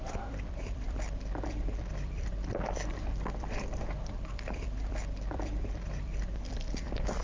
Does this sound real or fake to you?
fake